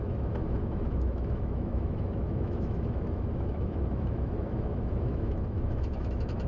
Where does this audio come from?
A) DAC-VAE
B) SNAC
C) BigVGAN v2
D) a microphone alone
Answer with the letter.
A